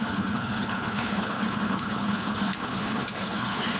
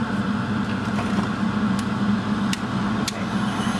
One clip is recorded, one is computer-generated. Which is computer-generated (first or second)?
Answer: first